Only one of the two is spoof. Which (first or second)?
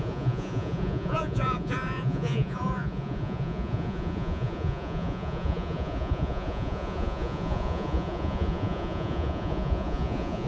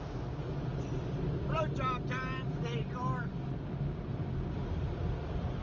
first